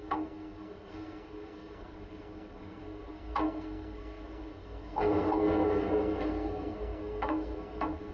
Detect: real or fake fake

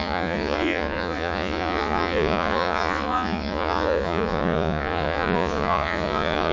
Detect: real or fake fake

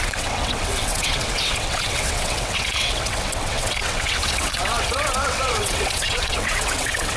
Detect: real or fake fake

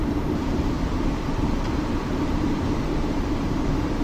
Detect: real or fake fake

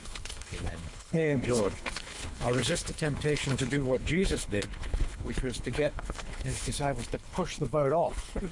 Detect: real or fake fake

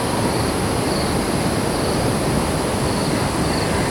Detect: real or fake real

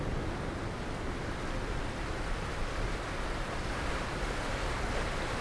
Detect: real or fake real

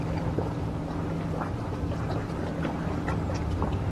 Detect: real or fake real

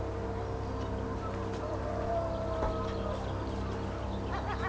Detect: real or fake real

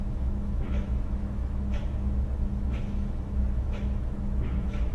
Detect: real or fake fake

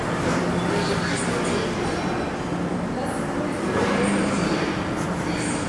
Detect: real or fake real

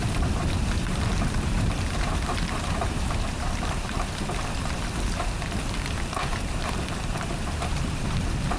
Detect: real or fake fake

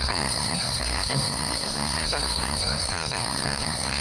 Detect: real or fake fake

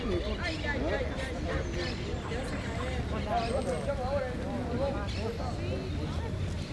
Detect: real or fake real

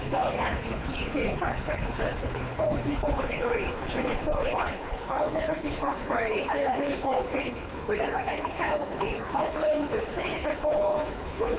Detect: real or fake fake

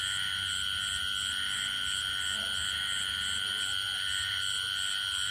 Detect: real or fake real